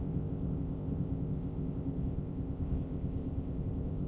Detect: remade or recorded remade